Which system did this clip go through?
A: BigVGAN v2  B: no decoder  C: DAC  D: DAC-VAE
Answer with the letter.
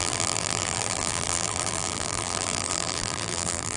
A